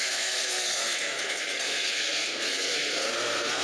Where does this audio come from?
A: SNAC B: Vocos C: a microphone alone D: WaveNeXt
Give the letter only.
A